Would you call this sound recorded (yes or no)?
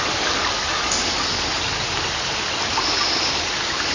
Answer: yes